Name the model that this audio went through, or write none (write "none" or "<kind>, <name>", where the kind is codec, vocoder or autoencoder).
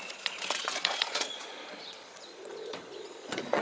vocoder, Vocos